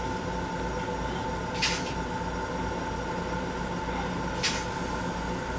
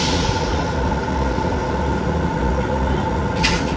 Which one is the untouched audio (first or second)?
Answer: first